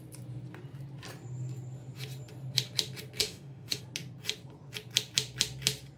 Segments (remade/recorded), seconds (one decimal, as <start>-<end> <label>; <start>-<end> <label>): 0.0-3.2 recorded; 3.2-3.8 remade; 3.8-6.0 recorded